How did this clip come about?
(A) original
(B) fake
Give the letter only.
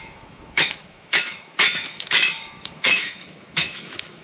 B